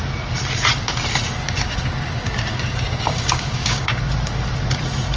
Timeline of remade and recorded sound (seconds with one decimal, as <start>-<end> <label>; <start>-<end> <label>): 0.0-1.4 recorded; 1.4-4.0 remade; 4.0-5.2 recorded